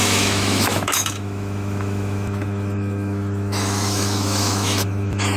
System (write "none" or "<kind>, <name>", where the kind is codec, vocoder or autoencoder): autoencoder, DAC-VAE